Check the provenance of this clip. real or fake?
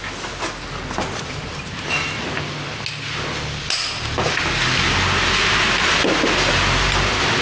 real